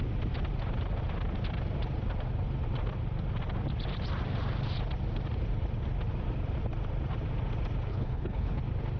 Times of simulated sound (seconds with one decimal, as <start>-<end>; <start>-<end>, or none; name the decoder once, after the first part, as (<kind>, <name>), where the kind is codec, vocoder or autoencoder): 7.9-8.6 (codec, HILCodec)